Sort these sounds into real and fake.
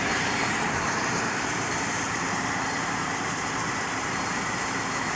fake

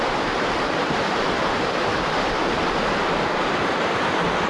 fake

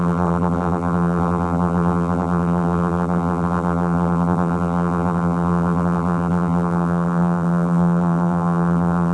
fake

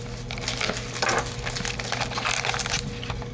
real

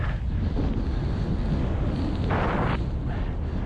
real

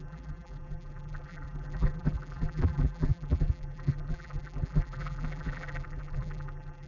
fake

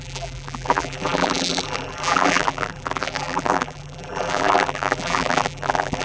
fake